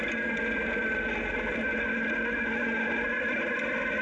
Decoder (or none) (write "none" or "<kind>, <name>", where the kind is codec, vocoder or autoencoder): none